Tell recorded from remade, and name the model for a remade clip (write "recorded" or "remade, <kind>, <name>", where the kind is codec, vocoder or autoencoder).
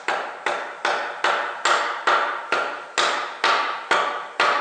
recorded